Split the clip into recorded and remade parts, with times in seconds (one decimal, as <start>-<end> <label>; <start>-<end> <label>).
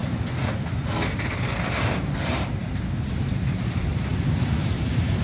0.0-1.4 recorded; 1.4-5.2 remade